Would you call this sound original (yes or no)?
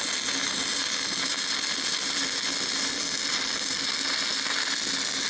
yes